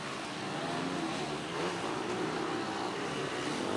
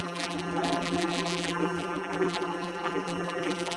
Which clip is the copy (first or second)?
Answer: second